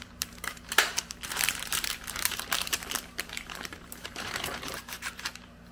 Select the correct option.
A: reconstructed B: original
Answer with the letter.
A